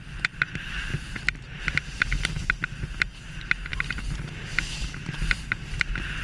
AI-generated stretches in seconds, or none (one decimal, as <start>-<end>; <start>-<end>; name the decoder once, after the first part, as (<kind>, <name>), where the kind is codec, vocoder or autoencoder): none

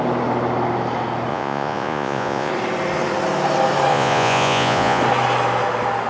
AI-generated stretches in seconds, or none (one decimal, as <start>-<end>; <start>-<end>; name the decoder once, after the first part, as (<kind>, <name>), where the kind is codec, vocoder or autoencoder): 1.3-2.5 (vocoder, Vocos); 3.9-5.0

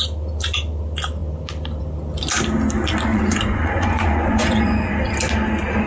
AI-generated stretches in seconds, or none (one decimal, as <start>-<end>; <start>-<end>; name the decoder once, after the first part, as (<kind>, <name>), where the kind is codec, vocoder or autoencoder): 3.1-4.9 (vocoder, Vocos)

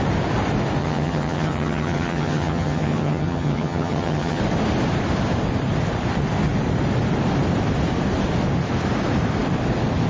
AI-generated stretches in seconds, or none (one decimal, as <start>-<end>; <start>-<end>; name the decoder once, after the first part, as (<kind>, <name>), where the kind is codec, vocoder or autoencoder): 0.8-4.4 (vocoder, HiFi-GAN)

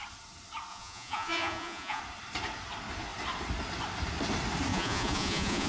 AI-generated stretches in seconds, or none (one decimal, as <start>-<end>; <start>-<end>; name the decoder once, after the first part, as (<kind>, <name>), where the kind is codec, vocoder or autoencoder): 0.7-2.0 (vocoder, Vocos); 4.7-5.7

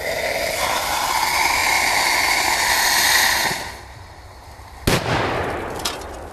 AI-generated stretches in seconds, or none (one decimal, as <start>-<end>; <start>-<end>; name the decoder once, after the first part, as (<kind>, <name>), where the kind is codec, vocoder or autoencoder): 3.4-4.7 (vocoder, BigVGAN v2)

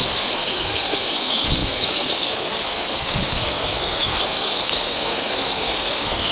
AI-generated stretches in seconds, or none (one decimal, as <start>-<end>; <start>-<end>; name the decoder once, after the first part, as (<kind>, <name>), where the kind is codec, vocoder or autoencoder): 0.0-6.3 (codec, SNAC)